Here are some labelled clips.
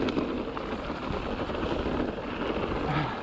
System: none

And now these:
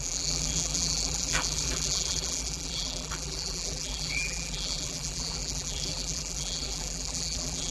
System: vocoder, BigVGAN v2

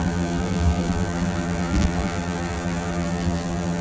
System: vocoder, BigVGAN v2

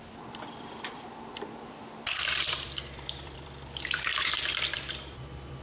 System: vocoder, BigVGAN v2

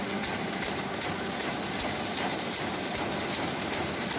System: vocoder, BigVGAN v2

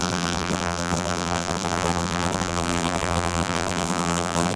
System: vocoder, BigVGAN v2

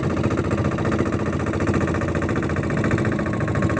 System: none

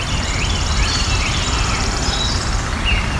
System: vocoder, BigVGAN v2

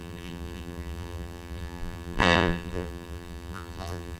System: vocoder, BigVGAN v2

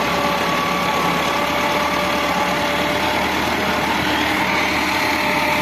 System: none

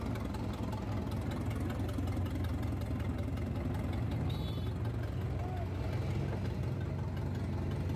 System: none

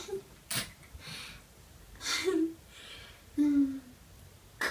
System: none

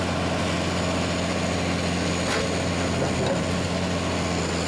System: none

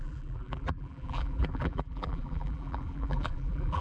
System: vocoder, BigVGAN v2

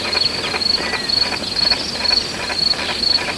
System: none